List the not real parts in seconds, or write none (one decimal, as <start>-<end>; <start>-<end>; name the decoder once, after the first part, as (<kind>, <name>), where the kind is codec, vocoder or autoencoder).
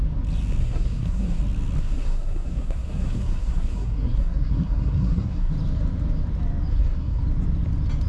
0.6-1.4 (codec, SNAC); 1.8-5.5; 6.7-7.2